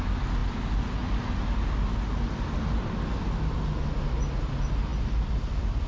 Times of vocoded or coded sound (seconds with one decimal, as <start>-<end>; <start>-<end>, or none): none